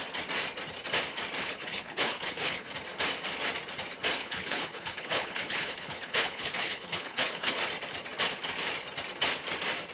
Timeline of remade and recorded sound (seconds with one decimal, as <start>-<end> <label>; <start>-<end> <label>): 0.0-1.4 recorded; 1.4-2.7 remade; 2.7-4.2 recorded; 4.2-7.6 remade; 7.6-9.9 recorded